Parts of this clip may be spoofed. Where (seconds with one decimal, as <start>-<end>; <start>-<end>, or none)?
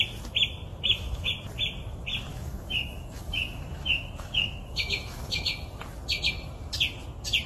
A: 0.7-1.3; 2.3-5.5